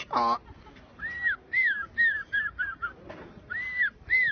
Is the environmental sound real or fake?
fake